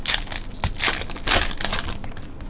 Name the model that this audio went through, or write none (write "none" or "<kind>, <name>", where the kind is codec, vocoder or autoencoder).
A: none